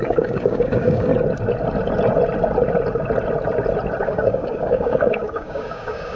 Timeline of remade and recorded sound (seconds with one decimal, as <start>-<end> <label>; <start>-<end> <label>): 0.0-1.1 remade; 1.1-4.0 recorded; 4.0-6.2 remade